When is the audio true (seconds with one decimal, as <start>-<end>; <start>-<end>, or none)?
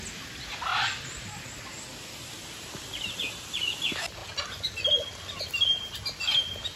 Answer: 0.0-6.8